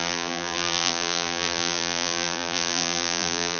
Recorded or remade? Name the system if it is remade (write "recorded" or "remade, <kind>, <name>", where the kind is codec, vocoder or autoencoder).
remade, vocoder, BigVGAN v2